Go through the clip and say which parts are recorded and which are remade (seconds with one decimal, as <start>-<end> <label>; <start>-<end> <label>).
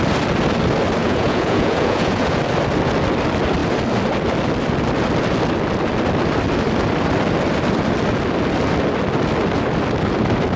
0.0-1.0 recorded; 1.0-2.4 remade; 2.4-10.6 recorded